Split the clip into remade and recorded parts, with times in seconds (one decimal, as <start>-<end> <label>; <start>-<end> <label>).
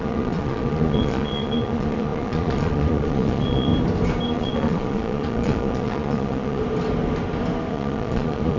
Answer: 0.0-3.7 remade; 3.7-4.3 recorded; 4.3-6.6 remade; 6.6-7.7 recorded; 7.7-8.6 remade